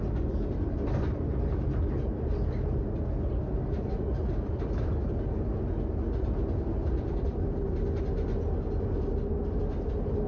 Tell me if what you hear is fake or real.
real